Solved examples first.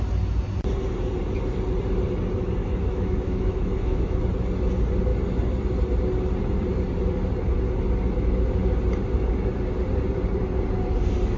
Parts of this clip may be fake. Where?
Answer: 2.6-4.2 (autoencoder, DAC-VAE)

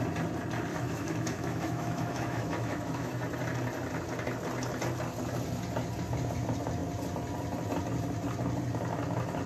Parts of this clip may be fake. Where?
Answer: 0.7-3.1 (autoencoder, DAC-VAE)

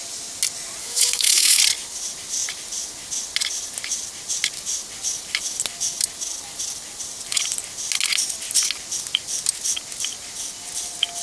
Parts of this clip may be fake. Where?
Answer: 0.8-1.6 (autoencoder, DAC-VAE)

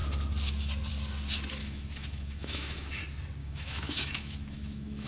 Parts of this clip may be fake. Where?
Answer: 1.6-3.0 (autoencoder, DAC-VAE); 3.4-5.1

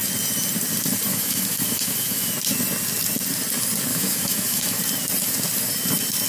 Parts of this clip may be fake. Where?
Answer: 1.1-2.3 (autoencoder, DAC-VAE); 3.9-4.8

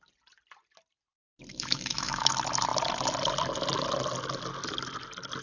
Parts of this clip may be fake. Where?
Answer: 1.5-2.3 (autoencoder, DAC-VAE)

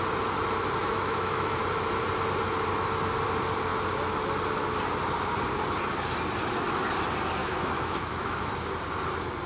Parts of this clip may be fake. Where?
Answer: 0.8-1.6 (autoencoder, DAC-VAE); 7.4-8.5

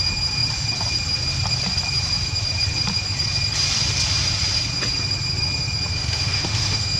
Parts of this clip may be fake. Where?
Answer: 5.9-7.0 (autoencoder, DAC-VAE)